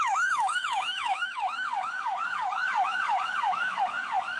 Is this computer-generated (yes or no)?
yes